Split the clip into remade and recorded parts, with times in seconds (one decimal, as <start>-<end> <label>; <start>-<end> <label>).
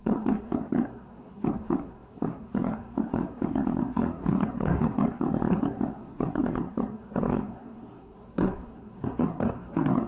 0.0-10.1 remade